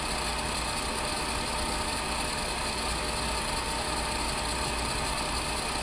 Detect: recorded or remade recorded